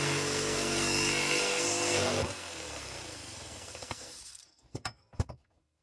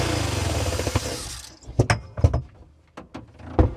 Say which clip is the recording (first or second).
second